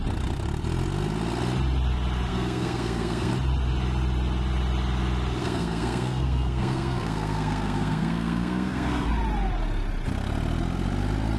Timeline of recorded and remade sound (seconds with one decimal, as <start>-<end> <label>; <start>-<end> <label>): 0.0-2.3 recorded; 2.3-3.3 remade; 3.3-5.4 recorded; 5.4-9.1 remade; 9.1-11.4 recorded